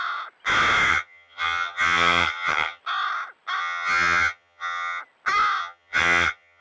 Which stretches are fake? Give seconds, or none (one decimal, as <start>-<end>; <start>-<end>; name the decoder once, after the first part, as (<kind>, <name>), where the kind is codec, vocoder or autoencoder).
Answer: 0.9-2.8 (vocoder, HiFi-GAN); 3.6-5.0; 5.6-6.6